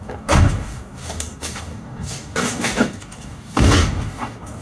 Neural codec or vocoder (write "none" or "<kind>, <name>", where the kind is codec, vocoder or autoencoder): codec, DAC